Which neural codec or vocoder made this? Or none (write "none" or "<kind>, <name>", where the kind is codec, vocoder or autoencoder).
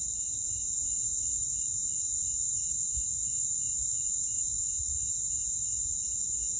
vocoder, BigVGAN v2